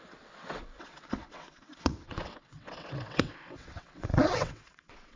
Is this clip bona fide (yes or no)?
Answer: no